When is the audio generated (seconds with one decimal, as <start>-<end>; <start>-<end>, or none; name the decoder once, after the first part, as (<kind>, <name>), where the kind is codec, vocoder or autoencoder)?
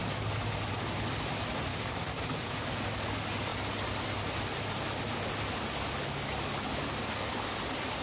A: 1.7-2.6 (codec, DAC)